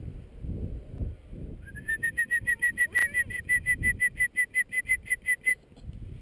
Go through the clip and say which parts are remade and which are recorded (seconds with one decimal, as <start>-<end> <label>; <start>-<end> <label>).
0.0-3.0 remade; 3.0-4.8 recorded; 4.8-6.2 remade